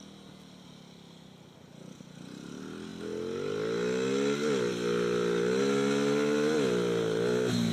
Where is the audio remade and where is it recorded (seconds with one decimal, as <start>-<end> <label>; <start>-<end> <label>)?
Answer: 0.0-7.7 recorded